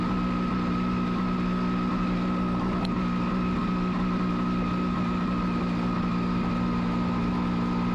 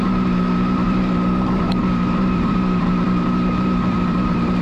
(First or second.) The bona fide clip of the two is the first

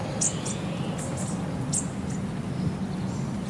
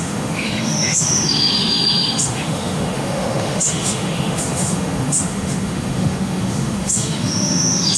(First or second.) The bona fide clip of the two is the first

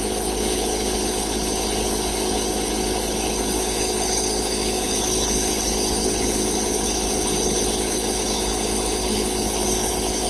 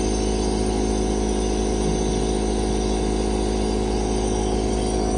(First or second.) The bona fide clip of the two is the second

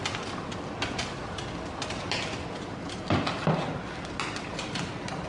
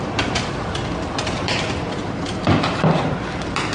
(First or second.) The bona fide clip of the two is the first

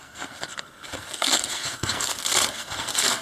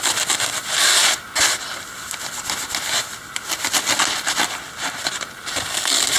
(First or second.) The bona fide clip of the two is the second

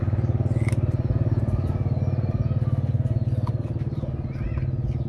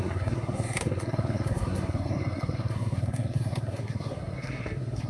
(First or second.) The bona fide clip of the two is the first